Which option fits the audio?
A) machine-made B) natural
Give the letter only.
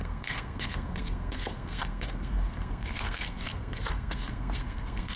A